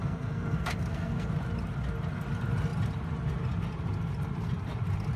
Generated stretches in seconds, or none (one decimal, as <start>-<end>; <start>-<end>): 0.0-1.3